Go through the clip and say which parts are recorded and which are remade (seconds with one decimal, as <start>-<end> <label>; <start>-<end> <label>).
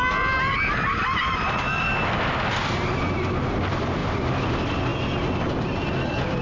0.0-4.0 recorded; 4.0-4.5 remade; 4.5-6.4 recorded